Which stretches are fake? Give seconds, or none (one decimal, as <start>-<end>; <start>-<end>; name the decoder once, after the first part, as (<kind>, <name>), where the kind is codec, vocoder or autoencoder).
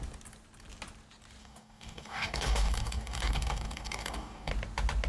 1.4-4.5 (codec, DAC)